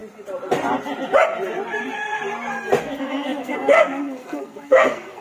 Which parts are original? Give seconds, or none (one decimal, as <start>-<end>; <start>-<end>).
0.0-2.8